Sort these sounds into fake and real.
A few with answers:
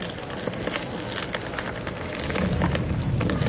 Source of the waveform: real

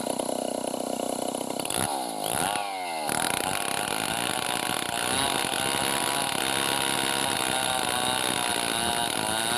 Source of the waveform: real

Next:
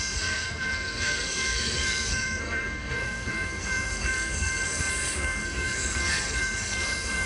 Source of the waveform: fake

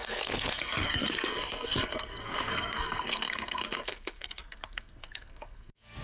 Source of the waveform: fake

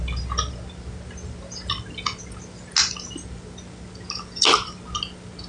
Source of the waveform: real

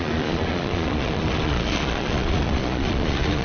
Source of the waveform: fake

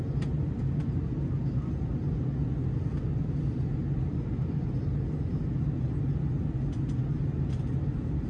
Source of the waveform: real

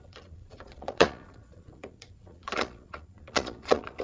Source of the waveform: fake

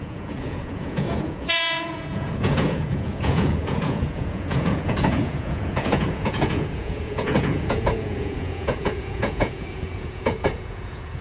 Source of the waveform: fake